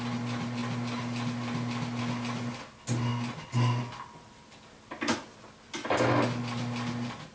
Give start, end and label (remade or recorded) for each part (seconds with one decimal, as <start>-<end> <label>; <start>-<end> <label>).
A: 0.0-7.3 recorded